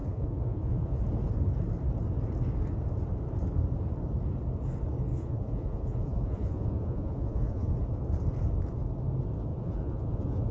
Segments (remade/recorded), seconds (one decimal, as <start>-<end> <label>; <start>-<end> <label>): 0.0-1.0 remade; 1.0-5.1 recorded; 5.1-7.7 remade; 7.7-9.5 recorded; 9.5-10.5 remade